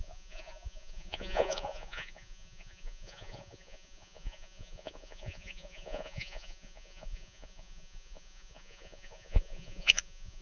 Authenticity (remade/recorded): remade